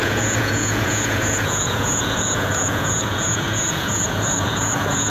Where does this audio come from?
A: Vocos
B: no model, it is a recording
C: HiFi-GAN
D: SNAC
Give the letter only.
A